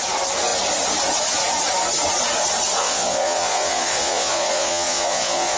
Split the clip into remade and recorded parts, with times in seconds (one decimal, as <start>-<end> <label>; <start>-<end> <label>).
0.0-2.8 recorded; 2.8-5.6 remade